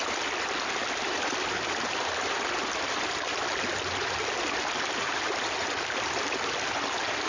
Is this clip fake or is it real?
real